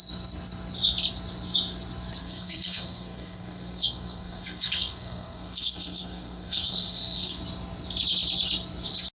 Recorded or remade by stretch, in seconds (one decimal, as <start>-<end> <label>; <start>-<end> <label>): 0.0-2.2 recorded; 2.2-7.4 remade; 7.4-9.2 recorded